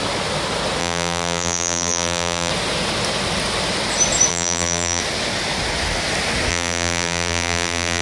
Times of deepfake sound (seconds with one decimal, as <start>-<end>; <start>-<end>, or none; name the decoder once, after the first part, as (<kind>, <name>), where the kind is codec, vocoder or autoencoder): 0.8-2.5 (vocoder, BigVGAN v2); 4.3-5.0; 6.5-8.0